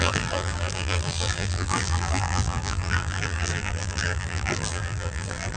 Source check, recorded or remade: remade